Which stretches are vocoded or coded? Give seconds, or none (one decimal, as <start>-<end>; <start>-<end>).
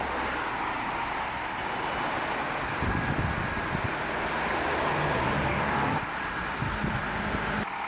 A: 5.5-6.0